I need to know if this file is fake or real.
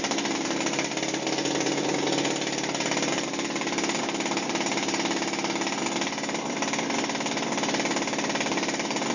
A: real